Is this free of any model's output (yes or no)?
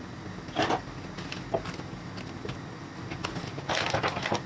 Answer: yes